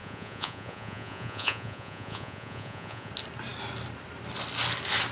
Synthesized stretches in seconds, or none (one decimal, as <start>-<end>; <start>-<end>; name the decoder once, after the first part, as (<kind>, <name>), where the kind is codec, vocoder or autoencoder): 0.0-3.1 (vocoder, Vocos)